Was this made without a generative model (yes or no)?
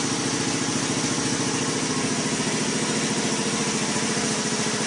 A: yes